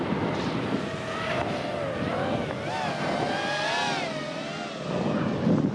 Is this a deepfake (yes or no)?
no